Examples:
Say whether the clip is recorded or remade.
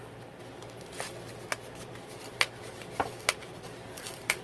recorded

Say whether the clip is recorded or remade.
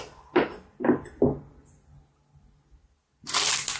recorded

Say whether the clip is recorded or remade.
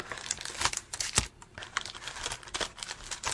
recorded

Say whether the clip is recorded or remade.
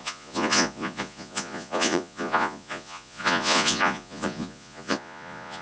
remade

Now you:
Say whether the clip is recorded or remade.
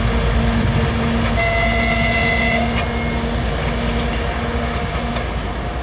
recorded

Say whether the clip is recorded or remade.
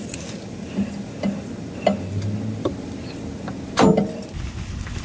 recorded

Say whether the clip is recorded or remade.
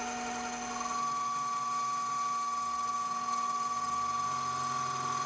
recorded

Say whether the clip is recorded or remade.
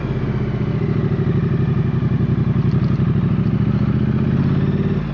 recorded